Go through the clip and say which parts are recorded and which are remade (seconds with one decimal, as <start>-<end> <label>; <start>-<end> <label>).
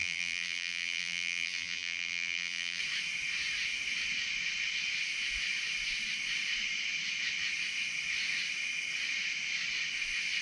0.0-2.8 remade; 2.8-10.4 recorded